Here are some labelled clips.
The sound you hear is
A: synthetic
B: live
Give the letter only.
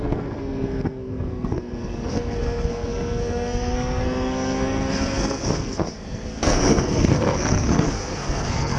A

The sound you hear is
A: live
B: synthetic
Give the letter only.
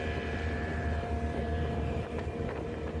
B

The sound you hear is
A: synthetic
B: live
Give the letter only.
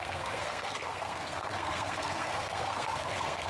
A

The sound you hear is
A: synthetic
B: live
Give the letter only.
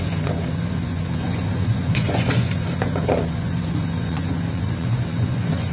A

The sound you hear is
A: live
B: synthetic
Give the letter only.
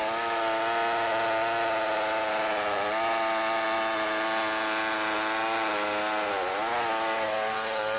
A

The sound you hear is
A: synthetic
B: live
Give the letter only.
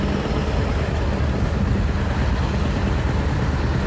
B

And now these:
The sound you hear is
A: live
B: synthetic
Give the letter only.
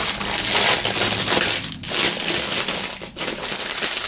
A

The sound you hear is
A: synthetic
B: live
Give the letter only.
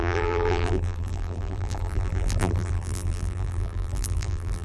A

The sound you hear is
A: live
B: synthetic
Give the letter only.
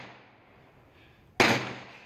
A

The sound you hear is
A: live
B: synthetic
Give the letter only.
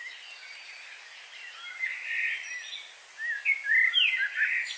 A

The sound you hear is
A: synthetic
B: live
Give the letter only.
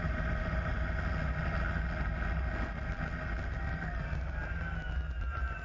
B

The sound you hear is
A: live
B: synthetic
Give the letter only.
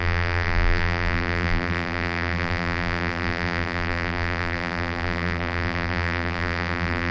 B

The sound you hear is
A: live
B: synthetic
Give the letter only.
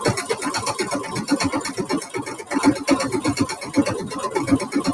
A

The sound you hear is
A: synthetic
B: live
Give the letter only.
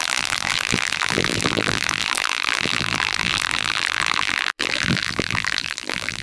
A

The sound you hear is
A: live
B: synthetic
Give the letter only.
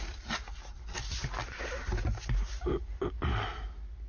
A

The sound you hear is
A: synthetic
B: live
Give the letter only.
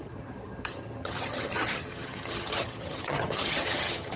A